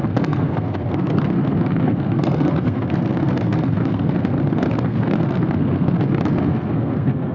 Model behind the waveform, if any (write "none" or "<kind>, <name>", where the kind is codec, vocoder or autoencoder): codec, SNAC